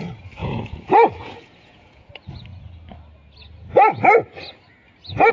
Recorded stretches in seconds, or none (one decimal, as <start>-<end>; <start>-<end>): 0.0-0.4; 2.3-5.3

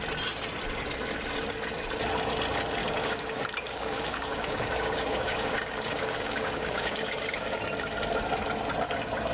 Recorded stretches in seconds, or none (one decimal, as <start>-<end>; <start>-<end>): 0.0-2.8; 7.6-9.3

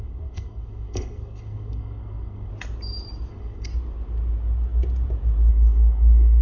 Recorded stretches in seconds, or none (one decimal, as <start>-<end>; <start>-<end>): 2.5-3.3; 3.7-5.5

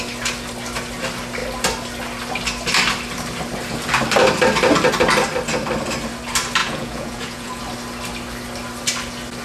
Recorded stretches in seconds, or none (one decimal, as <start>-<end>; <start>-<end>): 0.0-6.6; 7.6-9.4

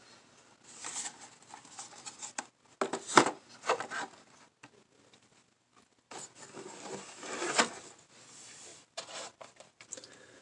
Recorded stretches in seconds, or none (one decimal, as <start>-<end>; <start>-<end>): 0.0-10.4

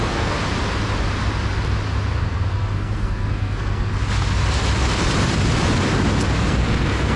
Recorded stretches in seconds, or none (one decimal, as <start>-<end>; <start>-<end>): 0.4-2.2; 3.9-6.4